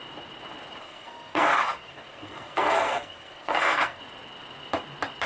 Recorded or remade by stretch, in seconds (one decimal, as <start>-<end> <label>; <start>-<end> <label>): 0.0-0.8 recorded; 0.8-4.0 remade; 4.0-5.3 recorded

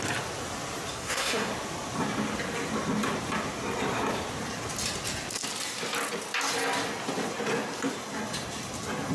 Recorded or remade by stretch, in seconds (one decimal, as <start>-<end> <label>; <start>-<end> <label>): 0.0-0.9 recorded; 0.9-1.5 remade; 1.5-9.1 recorded

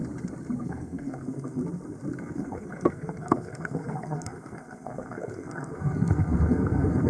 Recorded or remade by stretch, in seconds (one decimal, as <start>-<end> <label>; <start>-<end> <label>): 0.0-0.6 recorded; 0.6-1.6 remade; 1.6-2.2 recorded; 2.2-7.1 remade

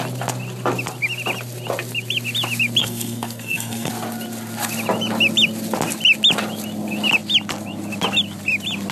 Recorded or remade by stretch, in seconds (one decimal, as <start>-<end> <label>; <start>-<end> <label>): 0.0-2.8 recorded; 2.8-3.9 remade; 3.9-8.9 recorded

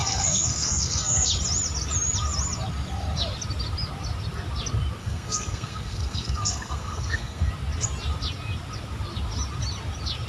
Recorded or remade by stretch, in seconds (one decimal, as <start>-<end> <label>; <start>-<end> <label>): 0.0-1.3 remade; 1.3-5.0 recorded; 5.0-7.5 remade; 7.5-10.3 recorded

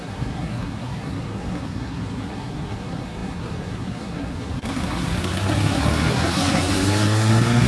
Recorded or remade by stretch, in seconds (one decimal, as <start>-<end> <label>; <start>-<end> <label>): 0.0-7.7 remade